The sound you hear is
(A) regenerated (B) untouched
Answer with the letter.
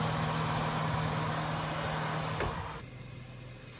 B